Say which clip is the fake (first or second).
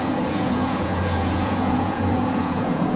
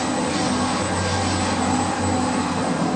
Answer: first